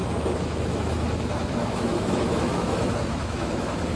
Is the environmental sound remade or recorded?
remade